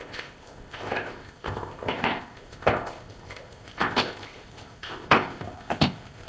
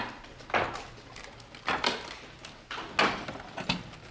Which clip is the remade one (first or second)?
first